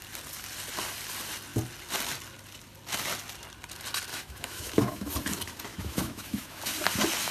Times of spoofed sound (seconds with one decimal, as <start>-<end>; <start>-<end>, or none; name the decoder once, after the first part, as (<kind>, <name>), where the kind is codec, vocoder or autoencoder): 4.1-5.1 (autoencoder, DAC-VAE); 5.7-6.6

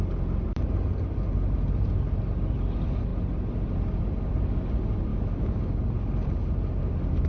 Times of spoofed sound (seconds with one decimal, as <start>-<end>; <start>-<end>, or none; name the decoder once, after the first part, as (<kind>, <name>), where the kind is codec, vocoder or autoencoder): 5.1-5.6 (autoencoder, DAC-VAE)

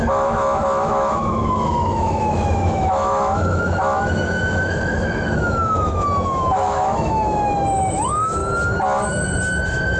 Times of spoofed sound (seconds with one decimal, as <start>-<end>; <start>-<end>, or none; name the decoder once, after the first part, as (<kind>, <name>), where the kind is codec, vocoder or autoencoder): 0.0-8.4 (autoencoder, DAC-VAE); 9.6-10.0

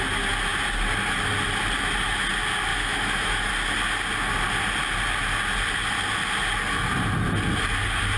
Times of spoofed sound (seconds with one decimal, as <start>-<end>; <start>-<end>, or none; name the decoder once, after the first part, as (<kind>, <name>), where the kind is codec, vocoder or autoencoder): 2.7-3.5 (autoencoder, DAC-VAE)

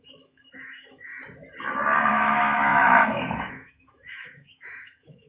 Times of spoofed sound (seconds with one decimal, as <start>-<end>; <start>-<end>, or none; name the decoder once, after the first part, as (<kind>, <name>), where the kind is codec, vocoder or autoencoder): 0.0-1.1 (autoencoder, DAC-VAE); 2.1-5.3

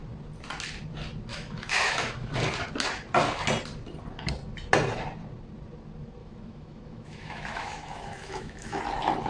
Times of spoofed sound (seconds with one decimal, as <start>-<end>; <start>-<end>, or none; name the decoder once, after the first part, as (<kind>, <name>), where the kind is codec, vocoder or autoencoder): 1.3-2.3 (autoencoder, DAC-VAE); 6.2-8.8

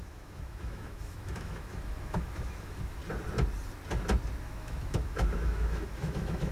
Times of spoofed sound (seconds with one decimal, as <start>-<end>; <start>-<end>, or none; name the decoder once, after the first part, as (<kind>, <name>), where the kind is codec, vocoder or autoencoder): 0.0-3.0 (autoencoder, DAC-VAE); 4.4-6.5